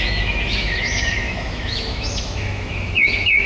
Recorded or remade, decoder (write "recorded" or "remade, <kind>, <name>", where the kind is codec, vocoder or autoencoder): remade, autoencoder, DAC-VAE